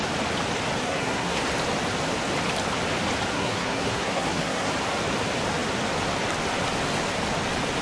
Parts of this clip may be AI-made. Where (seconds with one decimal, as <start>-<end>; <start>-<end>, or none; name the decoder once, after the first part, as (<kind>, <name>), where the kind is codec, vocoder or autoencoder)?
0.8-1.4 (codec, SNAC); 3.3-4.7